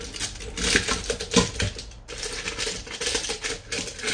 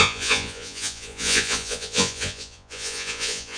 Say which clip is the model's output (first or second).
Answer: second